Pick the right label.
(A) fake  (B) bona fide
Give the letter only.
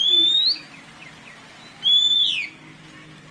B